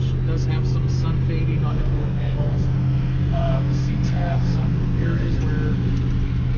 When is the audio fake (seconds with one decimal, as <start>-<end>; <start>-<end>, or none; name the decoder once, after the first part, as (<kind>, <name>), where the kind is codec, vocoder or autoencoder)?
1.7-5.4 (codec, SNAC)

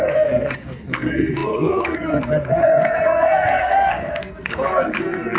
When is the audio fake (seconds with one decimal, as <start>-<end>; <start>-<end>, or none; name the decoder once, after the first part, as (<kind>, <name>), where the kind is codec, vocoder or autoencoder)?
0.0-5.4 (codec, SNAC)

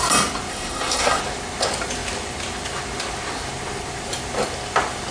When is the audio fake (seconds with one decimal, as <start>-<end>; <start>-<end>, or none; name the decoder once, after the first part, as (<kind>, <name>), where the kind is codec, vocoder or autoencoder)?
0.5-1.2 (codec, SNAC)

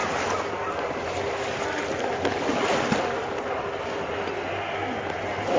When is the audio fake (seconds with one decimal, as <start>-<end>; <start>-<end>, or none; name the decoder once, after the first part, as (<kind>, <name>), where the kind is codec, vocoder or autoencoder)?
none

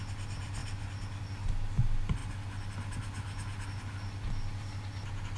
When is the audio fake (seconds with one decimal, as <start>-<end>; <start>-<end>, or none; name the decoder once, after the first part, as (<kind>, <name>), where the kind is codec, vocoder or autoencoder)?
none

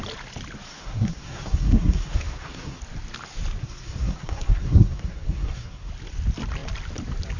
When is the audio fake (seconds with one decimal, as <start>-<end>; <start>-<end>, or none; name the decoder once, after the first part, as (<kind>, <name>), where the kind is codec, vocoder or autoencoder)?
0.7-2.8 (codec, SNAC); 3.6-5.9